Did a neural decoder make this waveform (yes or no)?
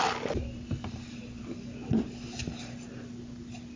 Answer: no